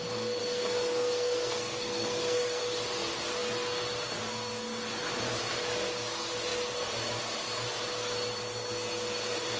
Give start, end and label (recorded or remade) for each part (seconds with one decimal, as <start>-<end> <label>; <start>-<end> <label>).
0.0-0.4 recorded; 0.4-2.6 remade; 2.6-9.6 recorded